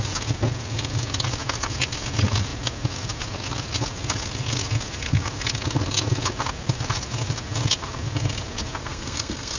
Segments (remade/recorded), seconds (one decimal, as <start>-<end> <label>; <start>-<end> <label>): 0.0-8.8 recorded; 8.8-9.6 remade